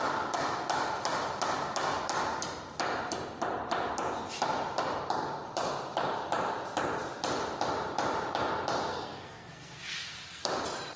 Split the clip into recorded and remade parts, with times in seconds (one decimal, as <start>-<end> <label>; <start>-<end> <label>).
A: 0.0-8.9 recorded; 8.9-10.4 remade; 10.4-11.0 recorded